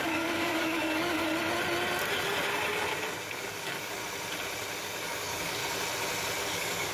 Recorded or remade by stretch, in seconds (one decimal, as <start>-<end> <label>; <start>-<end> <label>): 0.0-1.2 remade; 1.2-3.3 recorded; 3.3-4.0 remade; 4.0-4.8 recorded; 4.8-5.6 remade; 5.6-6.4 recorded; 6.4-6.9 remade